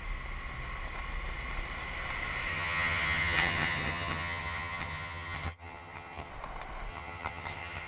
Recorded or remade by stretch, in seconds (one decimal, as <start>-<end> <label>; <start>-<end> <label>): 0.0-2.5 recorded; 2.5-6.3 remade; 6.3-6.9 recorded; 6.9-7.9 remade